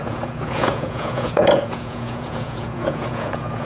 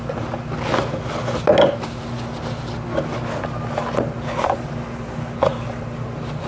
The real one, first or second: second